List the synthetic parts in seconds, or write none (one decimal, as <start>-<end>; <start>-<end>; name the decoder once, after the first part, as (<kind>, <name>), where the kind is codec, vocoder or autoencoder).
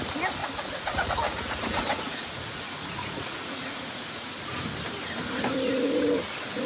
0.4-4.4 (vocoder, Vocos)